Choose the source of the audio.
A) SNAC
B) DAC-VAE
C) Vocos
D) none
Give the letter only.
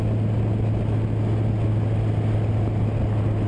D